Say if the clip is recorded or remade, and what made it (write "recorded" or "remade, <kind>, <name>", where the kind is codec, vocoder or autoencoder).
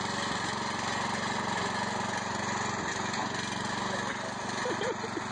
recorded